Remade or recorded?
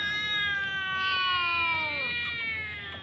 recorded